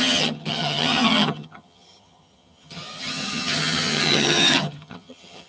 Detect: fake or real fake